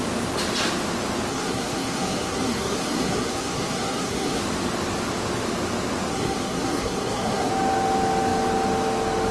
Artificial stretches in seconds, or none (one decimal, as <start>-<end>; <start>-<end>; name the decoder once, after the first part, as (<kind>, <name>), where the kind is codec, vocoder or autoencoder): 1.3-4.4 (codec, SNAC); 6.1-7.5